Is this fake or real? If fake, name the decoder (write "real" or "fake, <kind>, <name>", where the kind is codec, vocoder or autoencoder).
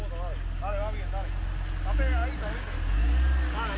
real